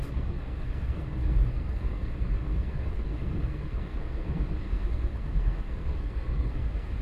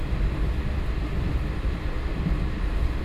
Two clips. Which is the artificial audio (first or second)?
first